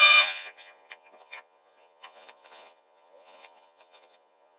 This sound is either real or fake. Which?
fake